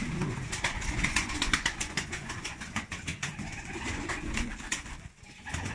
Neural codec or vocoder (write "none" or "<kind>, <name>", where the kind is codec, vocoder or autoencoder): vocoder, Vocos